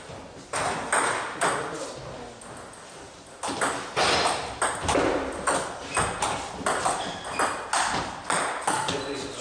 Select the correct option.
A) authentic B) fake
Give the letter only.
A